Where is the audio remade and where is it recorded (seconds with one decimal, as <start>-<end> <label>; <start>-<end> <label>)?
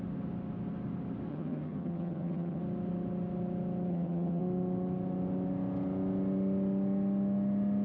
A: 0.0-1.3 recorded; 1.3-2.6 remade; 2.6-3.9 recorded; 3.9-4.4 remade; 4.4-7.8 recorded